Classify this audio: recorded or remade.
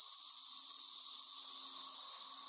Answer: recorded